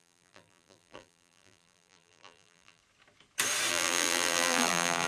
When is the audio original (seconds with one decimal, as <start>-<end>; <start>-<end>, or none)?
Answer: 2.8-3.7